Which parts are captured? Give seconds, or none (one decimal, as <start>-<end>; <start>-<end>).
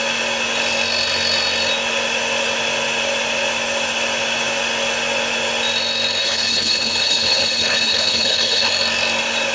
0.0-6.2; 8.7-9.5